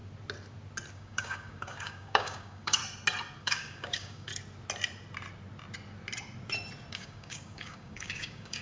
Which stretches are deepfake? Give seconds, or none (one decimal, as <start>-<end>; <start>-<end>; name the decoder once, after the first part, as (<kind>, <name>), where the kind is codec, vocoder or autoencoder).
0.9-2.8 (codec, DAC); 3.4-4.3; 6.9-8.6